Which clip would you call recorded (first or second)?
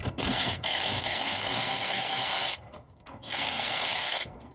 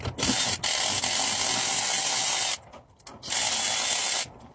second